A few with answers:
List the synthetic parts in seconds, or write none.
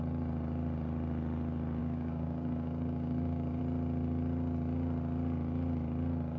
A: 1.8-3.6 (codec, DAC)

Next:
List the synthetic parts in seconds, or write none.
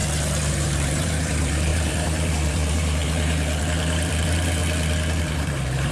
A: 0.5-4.6 (vocoder, BigVGAN v2); 5.2-5.9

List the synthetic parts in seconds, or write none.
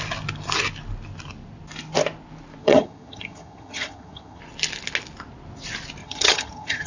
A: 2.6-4.4 (vocoder, HiFi-GAN); 6.0-6.9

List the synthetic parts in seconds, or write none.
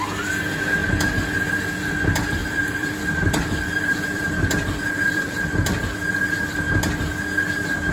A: 2.4-5.5 (vocoder, BigVGAN v2)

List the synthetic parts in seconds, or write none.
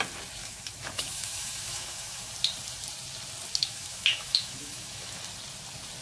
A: 0.4-2.3 (autoencoder, DAC-VAE); 3.6-5.2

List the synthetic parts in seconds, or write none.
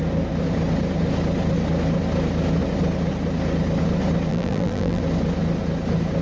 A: 4.3-5.0 (vocoder, BigVGAN v2)